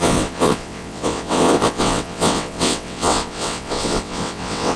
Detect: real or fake fake